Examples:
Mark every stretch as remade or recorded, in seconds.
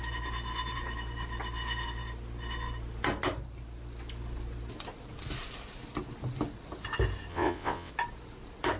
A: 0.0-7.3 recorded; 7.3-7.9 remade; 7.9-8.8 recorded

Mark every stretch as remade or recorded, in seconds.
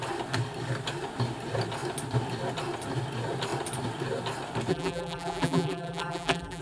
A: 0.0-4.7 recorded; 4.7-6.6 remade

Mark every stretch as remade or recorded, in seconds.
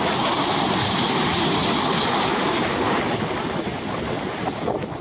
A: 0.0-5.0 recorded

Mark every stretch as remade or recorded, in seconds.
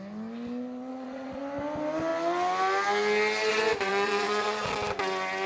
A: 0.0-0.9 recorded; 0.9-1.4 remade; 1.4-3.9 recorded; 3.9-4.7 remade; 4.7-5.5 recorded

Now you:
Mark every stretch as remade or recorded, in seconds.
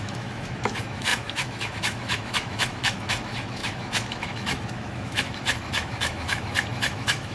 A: 0.0-7.3 remade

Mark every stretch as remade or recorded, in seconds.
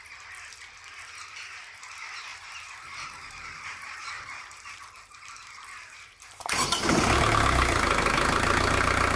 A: 0.0-2.3 recorded; 2.3-7.0 remade; 7.0-9.2 recorded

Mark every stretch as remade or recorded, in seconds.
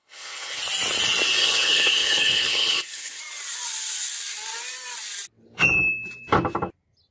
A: 0.0-0.6 remade; 0.6-1.4 recorded; 1.4-3.2 remade; 3.2-7.1 recorded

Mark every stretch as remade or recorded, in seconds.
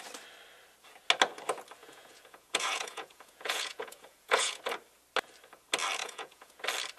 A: 0.0-1.8 recorded; 1.8-4.6 remade; 4.6-6.0 recorded; 6.0-6.6 remade; 6.6-7.0 recorded